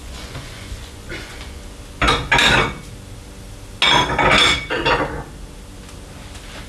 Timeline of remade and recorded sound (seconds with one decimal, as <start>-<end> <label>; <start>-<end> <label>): 0.0-1.6 remade; 1.6-6.7 recorded